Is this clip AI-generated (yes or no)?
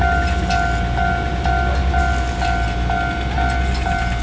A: no